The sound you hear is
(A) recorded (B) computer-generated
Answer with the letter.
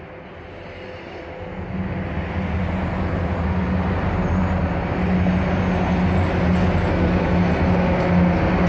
A